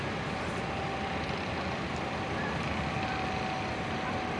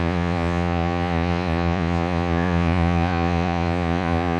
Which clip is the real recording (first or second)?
first